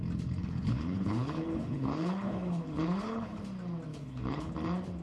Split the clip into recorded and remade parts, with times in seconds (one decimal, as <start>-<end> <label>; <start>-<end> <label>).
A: 0.0-0.4 recorded; 0.4-3.4 remade; 3.4-3.9 recorded; 3.9-4.5 remade; 4.5-5.0 recorded